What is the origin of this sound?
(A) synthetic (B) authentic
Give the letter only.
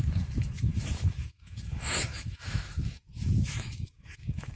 A